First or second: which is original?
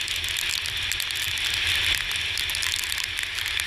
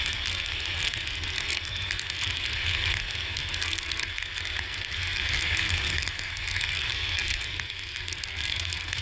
first